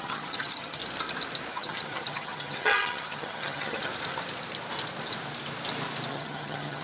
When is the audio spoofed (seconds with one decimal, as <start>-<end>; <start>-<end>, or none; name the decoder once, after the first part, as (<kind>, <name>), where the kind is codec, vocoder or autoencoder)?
0.0-0.8 (vocoder, HiFi-GAN); 1.5-3.9; 6.1-6.8